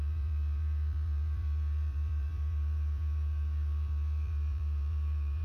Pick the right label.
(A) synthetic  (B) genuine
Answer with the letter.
A